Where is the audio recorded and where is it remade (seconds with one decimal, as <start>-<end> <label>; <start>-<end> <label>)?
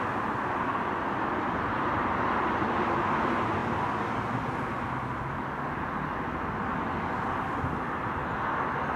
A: 0.0-9.0 recorded